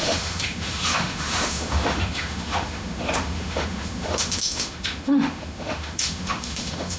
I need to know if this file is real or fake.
fake